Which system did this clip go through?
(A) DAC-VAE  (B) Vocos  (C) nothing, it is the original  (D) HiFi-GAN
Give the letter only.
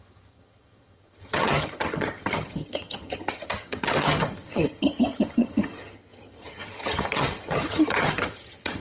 D